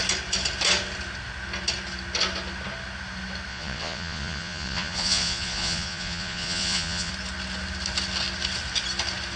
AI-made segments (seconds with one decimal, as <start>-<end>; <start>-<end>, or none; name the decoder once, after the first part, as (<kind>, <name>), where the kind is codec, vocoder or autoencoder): 3.5-7.1 (vocoder, Vocos)